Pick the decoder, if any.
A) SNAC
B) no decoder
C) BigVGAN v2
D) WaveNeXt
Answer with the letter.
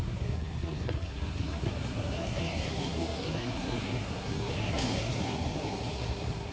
A